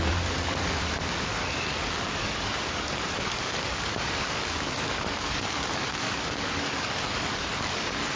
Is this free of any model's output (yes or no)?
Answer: no